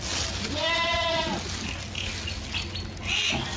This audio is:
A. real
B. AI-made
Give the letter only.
A